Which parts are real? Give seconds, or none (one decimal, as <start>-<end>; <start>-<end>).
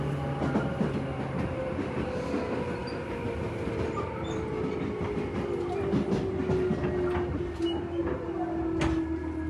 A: 0.0-9.5